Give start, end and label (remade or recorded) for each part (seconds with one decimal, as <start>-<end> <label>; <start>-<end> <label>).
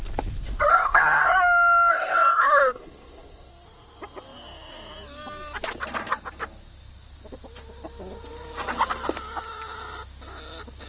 0.0-0.7 recorded; 0.7-1.3 remade; 1.3-1.9 recorded; 1.9-3.5 remade; 3.5-10.9 recorded